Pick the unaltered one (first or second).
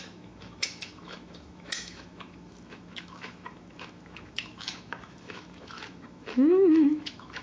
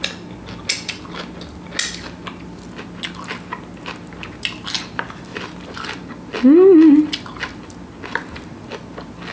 second